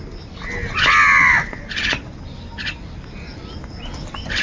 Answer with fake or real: real